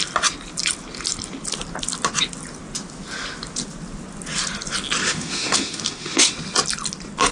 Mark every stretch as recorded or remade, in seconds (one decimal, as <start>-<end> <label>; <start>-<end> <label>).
0.0-5.0 recorded; 5.0-6.3 remade; 6.3-7.3 recorded